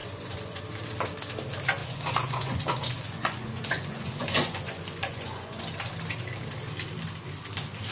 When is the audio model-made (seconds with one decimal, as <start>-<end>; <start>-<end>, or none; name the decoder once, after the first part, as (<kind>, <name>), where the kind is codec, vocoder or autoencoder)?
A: 0.0-0.6 (vocoder, Vocos); 1.8-5.6